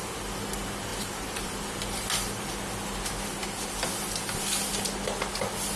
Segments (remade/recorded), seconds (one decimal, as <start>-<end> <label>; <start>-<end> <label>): 0.0-0.9 recorded; 0.9-2.5 remade; 2.5-5.8 recorded